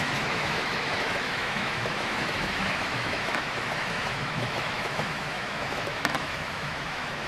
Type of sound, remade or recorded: remade